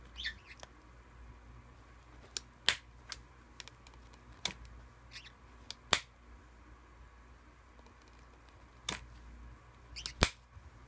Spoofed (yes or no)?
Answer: no